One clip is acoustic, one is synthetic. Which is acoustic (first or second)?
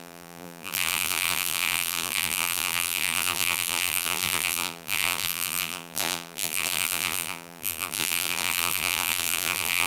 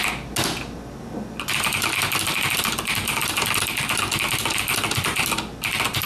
second